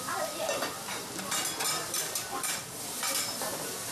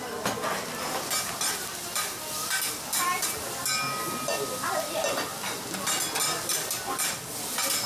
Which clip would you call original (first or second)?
second